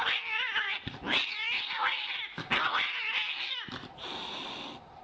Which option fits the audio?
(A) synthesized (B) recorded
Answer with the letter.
B